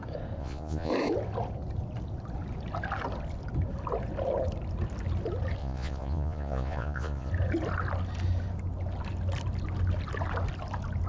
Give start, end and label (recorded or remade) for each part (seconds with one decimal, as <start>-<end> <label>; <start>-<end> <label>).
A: 0.0-0.4 recorded; 0.4-0.9 remade; 0.9-5.6 recorded; 5.6-7.3 remade; 7.3-11.1 recorded